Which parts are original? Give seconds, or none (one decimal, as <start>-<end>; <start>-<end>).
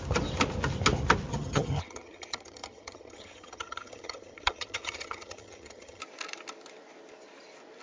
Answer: 0.0-1.3; 6.0-7.8